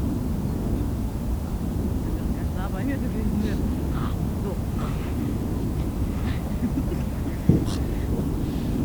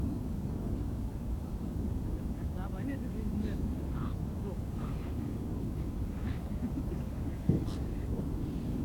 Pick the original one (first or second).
first